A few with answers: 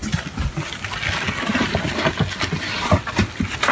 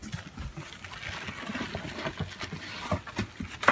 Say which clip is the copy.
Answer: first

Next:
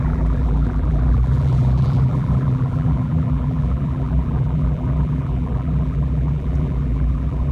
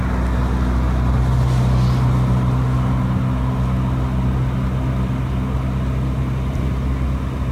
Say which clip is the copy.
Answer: first